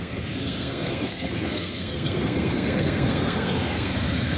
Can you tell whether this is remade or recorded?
remade